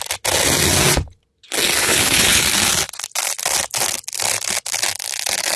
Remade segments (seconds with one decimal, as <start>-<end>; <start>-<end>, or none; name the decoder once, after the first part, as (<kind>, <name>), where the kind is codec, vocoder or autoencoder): 1.8-2.4 (codec, HILCodec)